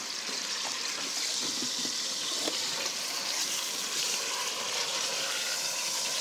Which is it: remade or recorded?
recorded